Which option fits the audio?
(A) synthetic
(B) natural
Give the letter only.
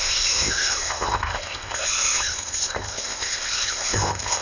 A